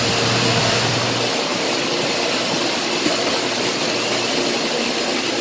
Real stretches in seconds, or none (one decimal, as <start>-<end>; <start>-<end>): 0.0-5.4